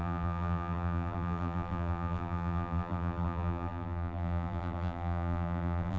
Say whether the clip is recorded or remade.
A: remade